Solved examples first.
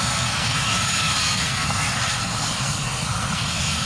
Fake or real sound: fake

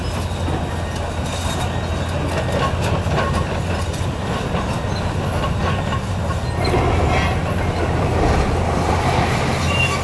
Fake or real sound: real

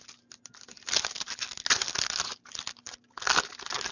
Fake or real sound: real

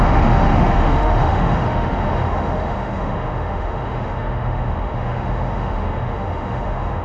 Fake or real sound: fake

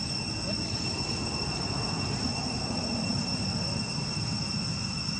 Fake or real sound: real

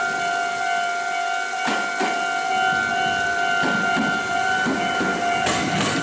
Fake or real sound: real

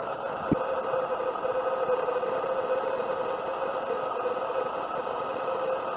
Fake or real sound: real